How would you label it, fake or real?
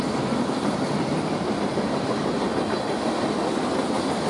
real